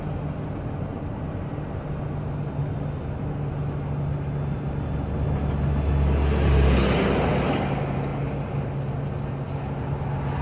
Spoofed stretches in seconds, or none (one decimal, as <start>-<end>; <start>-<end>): none